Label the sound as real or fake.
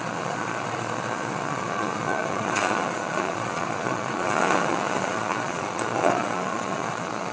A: fake